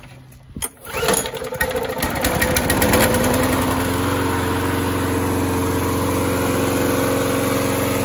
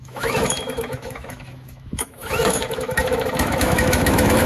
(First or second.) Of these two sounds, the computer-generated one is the second